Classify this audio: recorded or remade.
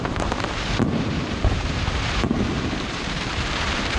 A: remade